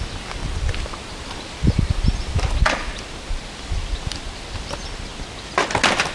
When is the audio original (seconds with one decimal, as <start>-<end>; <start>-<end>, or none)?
0.0-6.1